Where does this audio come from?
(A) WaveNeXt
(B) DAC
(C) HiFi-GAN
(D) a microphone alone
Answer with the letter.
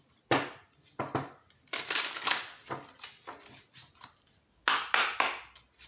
D